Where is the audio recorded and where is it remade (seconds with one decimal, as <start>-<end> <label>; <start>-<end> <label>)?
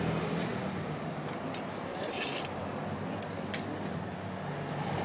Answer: 0.0-0.5 recorded; 0.5-2.6 remade; 2.6-3.7 recorded; 3.7-4.4 remade; 4.4-5.0 recorded